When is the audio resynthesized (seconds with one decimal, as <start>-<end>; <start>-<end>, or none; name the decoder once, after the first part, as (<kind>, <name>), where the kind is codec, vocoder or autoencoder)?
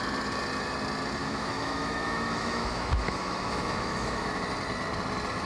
1.2-4.4 (autoencoder, DAC-VAE)